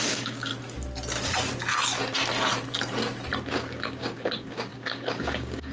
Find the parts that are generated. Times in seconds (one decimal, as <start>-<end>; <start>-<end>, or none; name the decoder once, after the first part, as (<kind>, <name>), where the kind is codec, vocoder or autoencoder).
0.0-0.5 (codec, DAC); 3.5-5.7